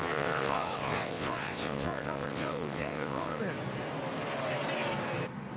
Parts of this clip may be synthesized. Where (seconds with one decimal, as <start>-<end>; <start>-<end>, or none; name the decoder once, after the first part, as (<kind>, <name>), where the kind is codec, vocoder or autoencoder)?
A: 0.0-3.4 (vocoder, WaveNeXt)

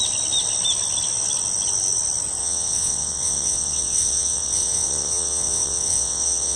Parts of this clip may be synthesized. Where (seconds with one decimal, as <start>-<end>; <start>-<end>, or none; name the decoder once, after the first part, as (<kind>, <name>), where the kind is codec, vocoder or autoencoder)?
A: 2.4-6.6 (vocoder, WaveNeXt)

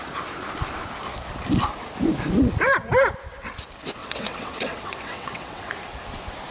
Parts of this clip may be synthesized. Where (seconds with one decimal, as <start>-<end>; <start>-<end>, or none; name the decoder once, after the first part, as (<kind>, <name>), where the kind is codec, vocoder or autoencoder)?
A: 4.0-5.7 (vocoder, WaveNeXt)

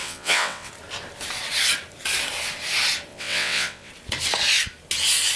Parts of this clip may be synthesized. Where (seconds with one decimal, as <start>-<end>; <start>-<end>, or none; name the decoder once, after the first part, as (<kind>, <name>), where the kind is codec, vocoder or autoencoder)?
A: 0.0-0.7 (vocoder, WaveNeXt); 3.1-3.9

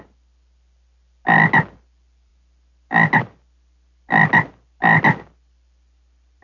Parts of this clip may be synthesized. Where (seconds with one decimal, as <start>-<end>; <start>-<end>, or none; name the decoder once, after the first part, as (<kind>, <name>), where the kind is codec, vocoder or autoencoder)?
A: none